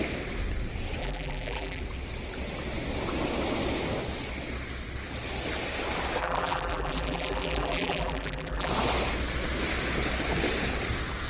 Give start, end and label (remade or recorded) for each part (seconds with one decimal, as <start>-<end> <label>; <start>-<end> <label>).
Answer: 0.0-1.0 recorded; 1.0-1.8 remade; 1.8-6.2 recorded; 6.2-8.7 remade; 8.7-11.3 recorded